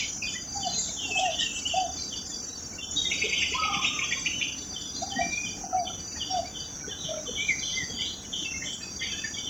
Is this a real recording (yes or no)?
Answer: yes